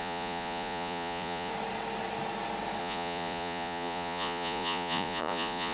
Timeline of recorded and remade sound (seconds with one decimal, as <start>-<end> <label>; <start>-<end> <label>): 0.0-1.5 remade; 1.5-2.8 recorded; 2.8-5.7 remade